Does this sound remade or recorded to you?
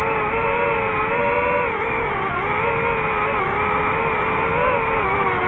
recorded